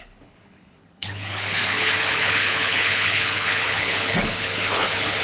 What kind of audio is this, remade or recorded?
remade